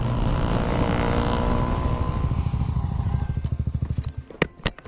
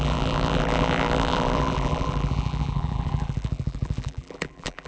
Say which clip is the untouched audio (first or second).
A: first